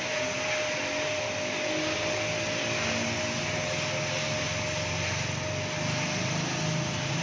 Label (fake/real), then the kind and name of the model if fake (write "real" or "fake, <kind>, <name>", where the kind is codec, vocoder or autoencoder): real